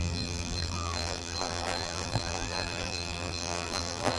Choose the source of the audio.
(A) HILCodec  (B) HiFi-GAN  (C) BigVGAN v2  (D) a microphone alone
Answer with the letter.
C